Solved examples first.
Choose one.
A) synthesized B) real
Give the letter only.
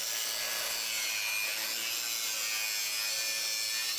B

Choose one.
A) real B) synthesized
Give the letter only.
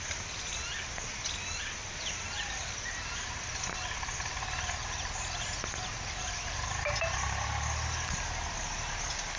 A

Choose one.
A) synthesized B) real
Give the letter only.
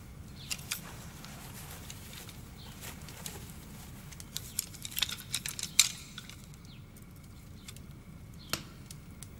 B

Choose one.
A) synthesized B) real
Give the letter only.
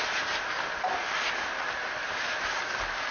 B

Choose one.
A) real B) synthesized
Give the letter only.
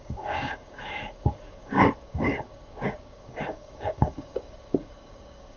B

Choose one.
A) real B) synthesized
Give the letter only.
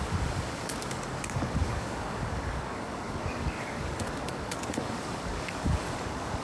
B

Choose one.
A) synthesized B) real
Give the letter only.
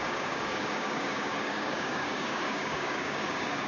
A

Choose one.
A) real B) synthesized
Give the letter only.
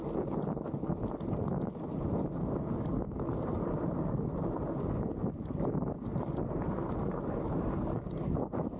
A